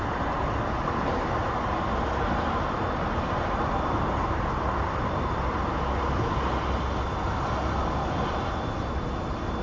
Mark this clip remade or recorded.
recorded